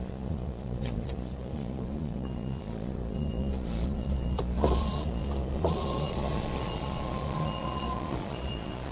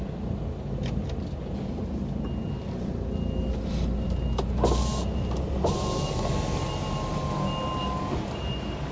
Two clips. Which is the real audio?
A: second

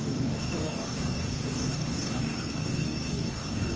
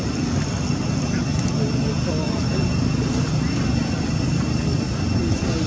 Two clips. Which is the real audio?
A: second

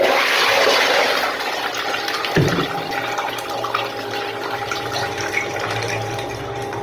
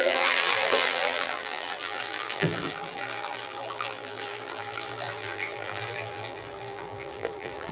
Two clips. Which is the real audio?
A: first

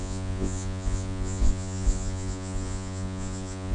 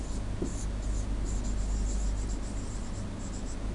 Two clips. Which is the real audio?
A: second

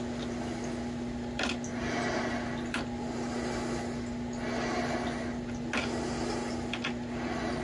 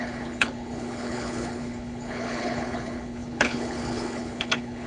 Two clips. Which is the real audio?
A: first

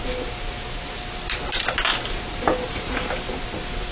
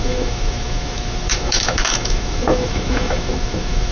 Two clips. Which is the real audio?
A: first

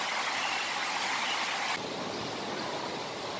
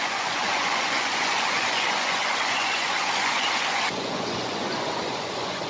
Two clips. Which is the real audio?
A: first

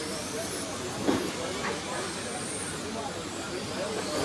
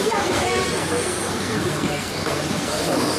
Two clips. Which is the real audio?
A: first